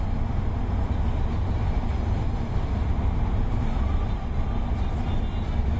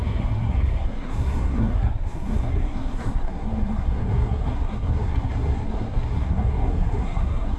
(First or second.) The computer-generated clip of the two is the second